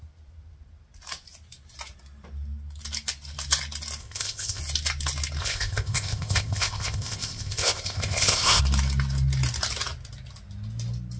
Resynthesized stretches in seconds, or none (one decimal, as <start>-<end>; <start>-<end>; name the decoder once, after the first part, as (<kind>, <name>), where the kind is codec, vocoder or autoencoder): 4.0-4.6 (codec, ZipCodec); 5.4-8.6